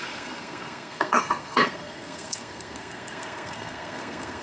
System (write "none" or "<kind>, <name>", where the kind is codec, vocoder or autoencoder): codec, SNAC